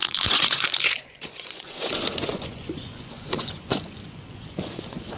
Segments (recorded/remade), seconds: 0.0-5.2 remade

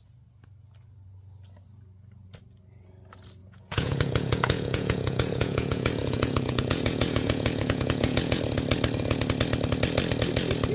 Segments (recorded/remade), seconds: 0.0-3.4 recorded; 3.4-8.4 remade; 8.4-10.7 recorded

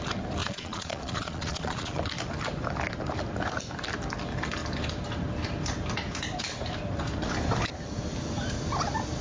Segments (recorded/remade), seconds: 0.0-0.4 recorded; 0.4-2.0 remade; 2.0-9.2 recorded

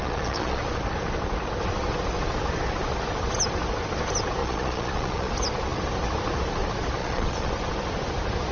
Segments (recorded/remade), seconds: 0.0-0.6 remade; 0.6-4.4 recorded; 4.4-5.3 remade; 5.3-7.0 recorded; 7.0-7.5 remade; 7.5-8.5 recorded